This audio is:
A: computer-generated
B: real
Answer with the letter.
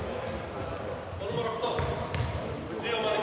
B